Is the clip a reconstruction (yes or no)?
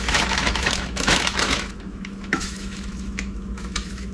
yes